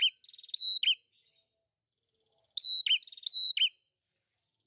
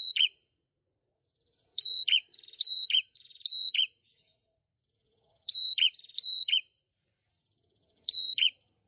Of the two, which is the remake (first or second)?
second